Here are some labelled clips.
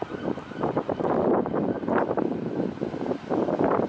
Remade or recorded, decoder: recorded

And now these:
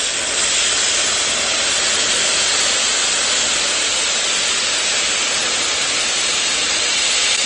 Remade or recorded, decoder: recorded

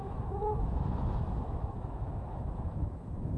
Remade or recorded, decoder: remade, autoencoder, DAC-VAE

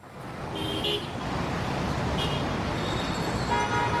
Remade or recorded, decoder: recorded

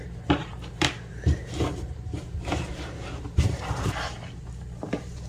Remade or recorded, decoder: remade, vocoder, BigVGAN v2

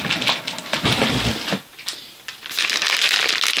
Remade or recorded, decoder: recorded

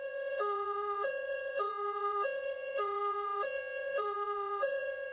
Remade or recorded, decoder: remade, vocoder, WaveNeXt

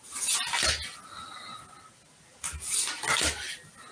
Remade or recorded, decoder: recorded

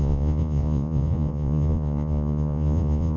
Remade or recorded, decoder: remade, vocoder, Vocos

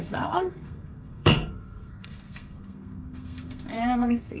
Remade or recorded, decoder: remade, codec, SNAC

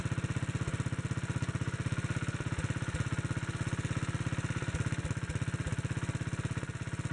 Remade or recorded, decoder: recorded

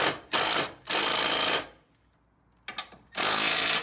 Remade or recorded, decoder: recorded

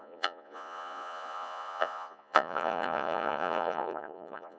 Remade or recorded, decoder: remade, vocoder, Vocos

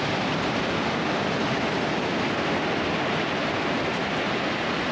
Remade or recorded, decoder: recorded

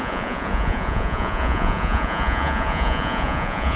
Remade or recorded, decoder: remade, vocoder, Vocos